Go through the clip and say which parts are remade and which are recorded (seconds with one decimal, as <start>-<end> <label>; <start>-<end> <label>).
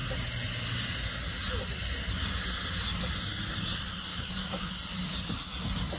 0.0-4.1 recorded; 4.1-4.7 remade; 4.7-6.0 recorded